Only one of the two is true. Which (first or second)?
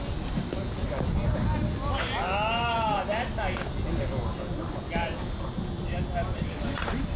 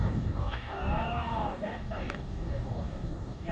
first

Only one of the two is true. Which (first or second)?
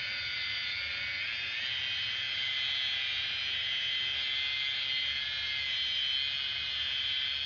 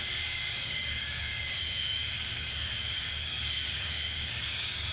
first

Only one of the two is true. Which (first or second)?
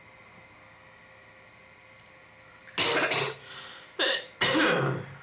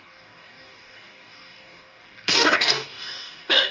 first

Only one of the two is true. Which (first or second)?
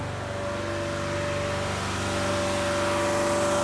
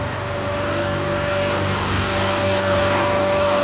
first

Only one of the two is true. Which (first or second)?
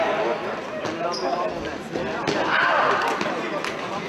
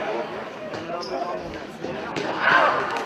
first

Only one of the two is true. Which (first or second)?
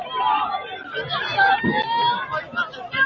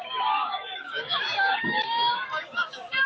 first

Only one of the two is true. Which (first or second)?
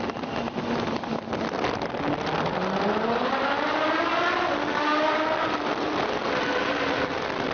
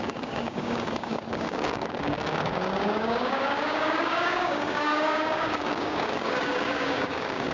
first